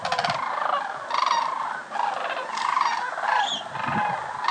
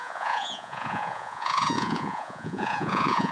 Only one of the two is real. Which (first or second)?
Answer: first